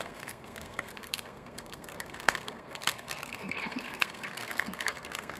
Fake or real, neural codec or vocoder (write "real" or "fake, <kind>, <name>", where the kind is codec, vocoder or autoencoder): fake, codec, SNAC